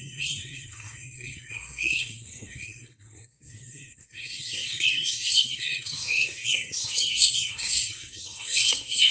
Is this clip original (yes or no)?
no